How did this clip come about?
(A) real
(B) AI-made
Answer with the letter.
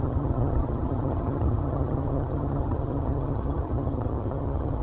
B